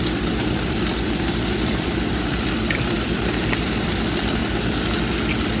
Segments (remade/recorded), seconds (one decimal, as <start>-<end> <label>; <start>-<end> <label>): 0.0-4.4 remade; 4.4-5.6 recorded